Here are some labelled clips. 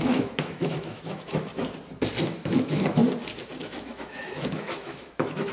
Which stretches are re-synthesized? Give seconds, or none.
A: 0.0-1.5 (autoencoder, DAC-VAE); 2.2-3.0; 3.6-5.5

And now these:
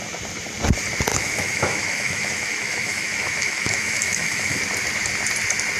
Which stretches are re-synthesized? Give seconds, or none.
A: 1.1-4.6 (autoencoder, DAC-VAE)

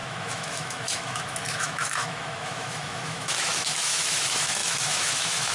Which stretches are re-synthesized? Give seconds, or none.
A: 0.0-5.5 (autoencoder, DAC-VAE)

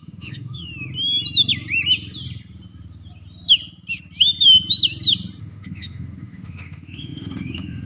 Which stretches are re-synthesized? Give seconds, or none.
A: 0.0-0.7 (autoencoder, DAC-VAE); 5.4-7.9

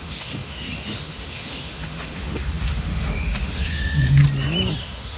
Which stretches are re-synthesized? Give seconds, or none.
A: 0.0-4.2 (autoencoder, DAC-VAE); 4.8-5.2